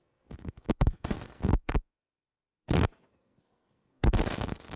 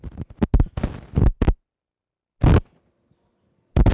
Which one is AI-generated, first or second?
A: first